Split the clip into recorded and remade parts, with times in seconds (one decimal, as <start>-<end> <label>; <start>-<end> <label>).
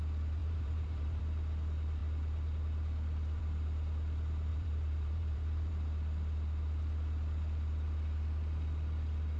0.0-0.4 recorded; 0.4-1.2 remade; 1.2-4.5 recorded; 4.5-5.7 remade; 5.7-9.4 recorded